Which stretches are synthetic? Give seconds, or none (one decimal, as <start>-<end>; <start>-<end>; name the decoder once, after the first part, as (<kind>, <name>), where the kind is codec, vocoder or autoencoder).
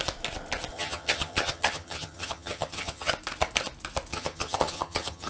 0.7-3.1 (vocoder, HiFi-GAN); 4.1-5.3